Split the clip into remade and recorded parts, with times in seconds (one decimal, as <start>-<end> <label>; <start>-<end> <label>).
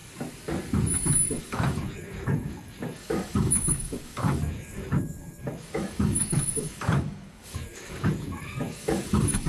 0.0-1.4 recorded; 1.4-9.5 remade